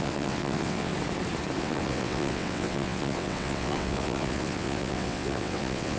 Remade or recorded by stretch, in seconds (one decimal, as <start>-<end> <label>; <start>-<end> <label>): 0.0-0.9 remade; 0.9-1.6 recorded; 1.6-6.0 remade

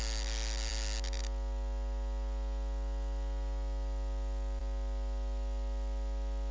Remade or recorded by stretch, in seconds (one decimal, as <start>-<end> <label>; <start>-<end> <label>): 0.0-6.5 recorded

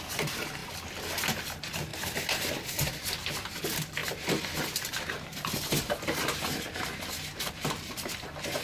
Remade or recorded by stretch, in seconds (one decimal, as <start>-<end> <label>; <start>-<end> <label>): 0.0-0.6 remade; 0.6-1.4 recorded; 1.4-4.0 remade; 4.0-7.5 recorded; 7.5-8.6 remade

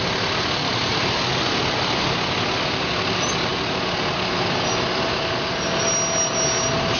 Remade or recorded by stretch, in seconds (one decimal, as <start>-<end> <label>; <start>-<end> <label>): 0.0-7.0 recorded

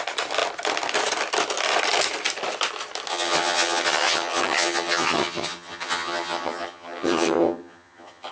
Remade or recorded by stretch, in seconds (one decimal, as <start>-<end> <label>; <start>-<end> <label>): 0.0-3.1 recorded; 3.1-8.3 remade